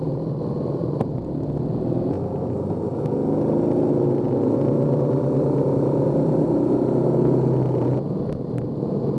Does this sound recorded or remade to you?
recorded